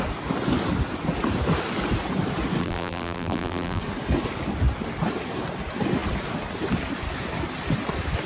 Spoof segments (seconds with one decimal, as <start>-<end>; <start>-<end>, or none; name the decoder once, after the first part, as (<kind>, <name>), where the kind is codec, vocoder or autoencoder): 2.6-3.8 (vocoder, BigVGAN v2)